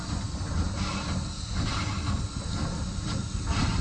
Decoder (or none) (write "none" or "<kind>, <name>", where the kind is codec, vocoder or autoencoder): none